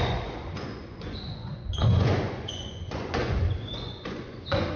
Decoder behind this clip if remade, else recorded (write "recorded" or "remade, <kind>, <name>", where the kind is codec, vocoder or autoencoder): remade, vocoder, Vocos